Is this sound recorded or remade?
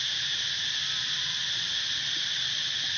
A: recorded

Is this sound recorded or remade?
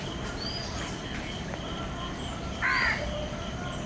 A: remade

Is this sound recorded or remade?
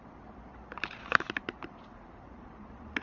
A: remade